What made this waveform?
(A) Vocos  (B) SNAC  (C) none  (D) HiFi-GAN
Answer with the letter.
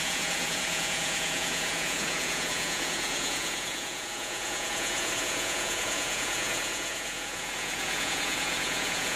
A